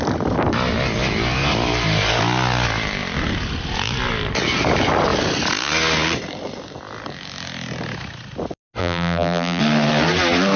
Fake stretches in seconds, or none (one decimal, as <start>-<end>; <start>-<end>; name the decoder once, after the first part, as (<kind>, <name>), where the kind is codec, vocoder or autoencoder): 8.8-9.6 (vocoder, BigVGAN v2)